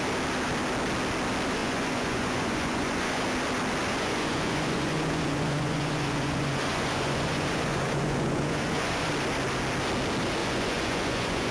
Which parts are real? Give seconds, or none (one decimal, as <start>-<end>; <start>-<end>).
0.0-1.6; 3.2-4.0; 9.1-10.4